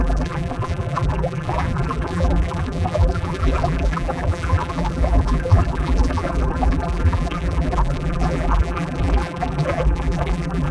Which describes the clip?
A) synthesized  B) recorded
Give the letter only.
A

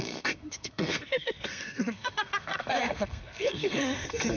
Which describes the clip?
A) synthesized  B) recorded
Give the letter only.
A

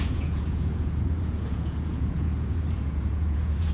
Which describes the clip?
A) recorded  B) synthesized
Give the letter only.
B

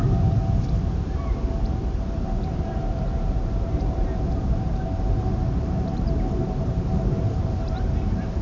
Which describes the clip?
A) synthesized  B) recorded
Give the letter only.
A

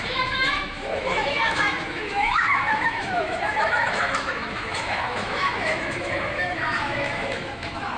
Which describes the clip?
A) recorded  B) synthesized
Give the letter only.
B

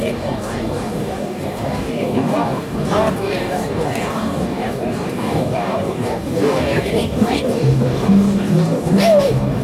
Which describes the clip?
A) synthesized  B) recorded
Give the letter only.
A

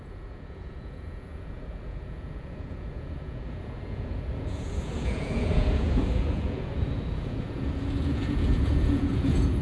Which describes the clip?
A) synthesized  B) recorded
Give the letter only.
A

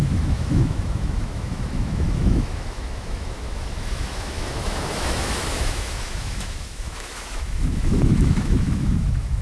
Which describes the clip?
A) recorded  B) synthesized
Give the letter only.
B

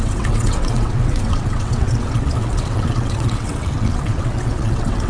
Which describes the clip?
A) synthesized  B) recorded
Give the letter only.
A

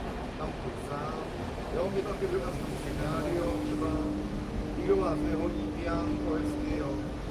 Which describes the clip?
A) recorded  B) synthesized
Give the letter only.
A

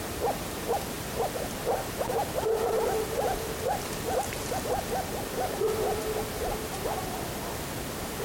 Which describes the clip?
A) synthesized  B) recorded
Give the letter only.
B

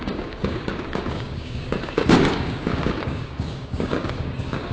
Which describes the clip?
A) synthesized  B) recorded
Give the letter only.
A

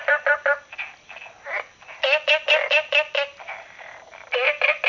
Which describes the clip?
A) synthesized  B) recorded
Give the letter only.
B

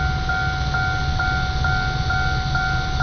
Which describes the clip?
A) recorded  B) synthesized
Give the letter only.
A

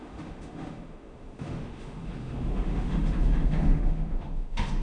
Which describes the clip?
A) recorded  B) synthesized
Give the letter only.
B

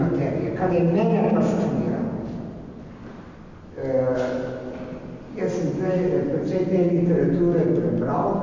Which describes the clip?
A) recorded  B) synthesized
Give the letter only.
A